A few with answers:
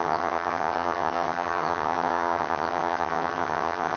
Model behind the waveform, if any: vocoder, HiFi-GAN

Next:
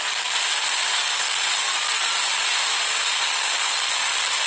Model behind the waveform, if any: none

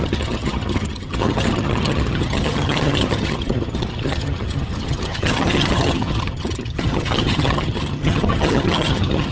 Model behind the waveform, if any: vocoder, HiFi-GAN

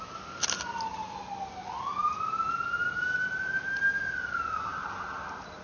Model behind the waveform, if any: none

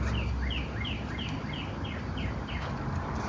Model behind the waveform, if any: none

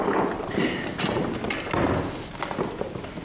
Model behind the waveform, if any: none